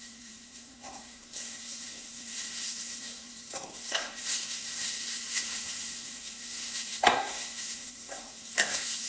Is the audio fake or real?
fake